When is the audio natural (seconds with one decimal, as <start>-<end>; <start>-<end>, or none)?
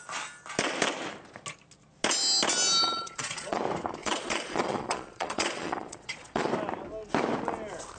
0.0-2.8; 3.6-4.0; 6.5-8.0